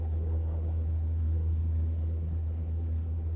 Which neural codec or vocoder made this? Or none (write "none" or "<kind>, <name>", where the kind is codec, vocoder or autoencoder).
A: codec, SNAC